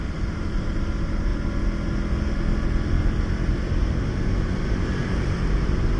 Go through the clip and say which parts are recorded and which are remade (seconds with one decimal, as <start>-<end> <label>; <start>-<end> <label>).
0.0-1.3 remade; 1.3-3.9 recorded; 3.9-6.0 remade